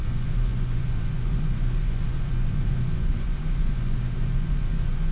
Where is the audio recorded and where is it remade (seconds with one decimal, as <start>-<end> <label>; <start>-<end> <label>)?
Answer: 0.0-5.1 remade